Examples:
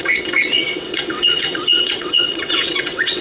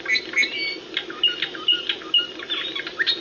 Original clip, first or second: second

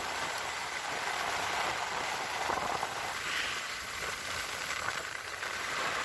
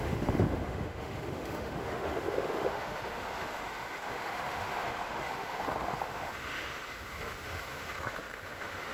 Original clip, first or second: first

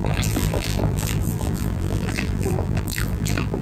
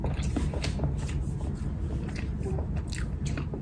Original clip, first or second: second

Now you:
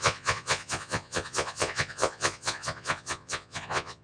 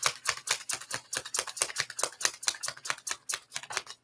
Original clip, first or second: second